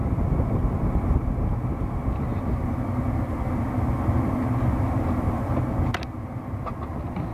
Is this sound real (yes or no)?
yes